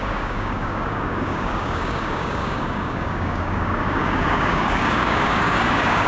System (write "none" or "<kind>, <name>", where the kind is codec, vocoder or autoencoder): codec, DAC